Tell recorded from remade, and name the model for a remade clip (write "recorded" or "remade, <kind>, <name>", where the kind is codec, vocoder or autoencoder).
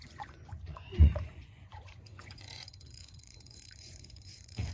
remade, vocoder, Vocos